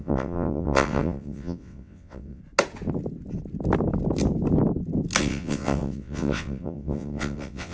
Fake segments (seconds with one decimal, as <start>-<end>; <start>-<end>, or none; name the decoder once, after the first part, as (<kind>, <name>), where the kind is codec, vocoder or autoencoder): 0.0-2.4 (vocoder, WaveNeXt); 5.2-7.7